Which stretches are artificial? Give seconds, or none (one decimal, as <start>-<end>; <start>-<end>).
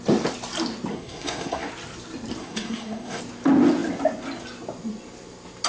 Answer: 0.9-1.7; 2.4-3.2